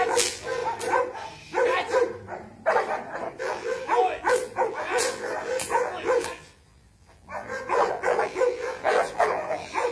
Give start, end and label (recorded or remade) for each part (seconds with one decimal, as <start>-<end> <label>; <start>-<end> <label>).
0.0-0.6 remade; 0.6-3.4 recorded; 3.4-9.9 remade